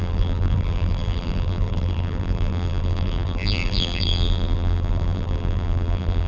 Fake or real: fake